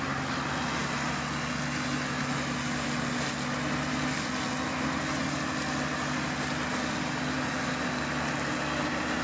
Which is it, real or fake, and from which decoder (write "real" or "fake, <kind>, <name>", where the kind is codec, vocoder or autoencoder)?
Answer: real